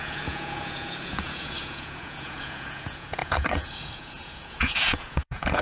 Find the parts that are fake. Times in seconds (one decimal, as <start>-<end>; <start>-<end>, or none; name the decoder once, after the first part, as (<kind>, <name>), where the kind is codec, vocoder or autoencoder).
0.0-5.6 (vocoder, Vocos)